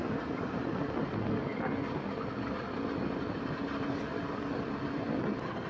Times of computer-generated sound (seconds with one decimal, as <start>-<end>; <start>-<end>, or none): none